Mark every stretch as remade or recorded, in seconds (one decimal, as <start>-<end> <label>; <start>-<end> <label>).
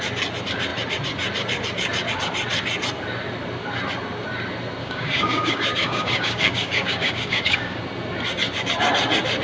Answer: 0.0-4.8 recorded; 4.8-7.8 remade; 7.8-9.4 recorded